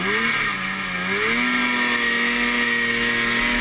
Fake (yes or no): no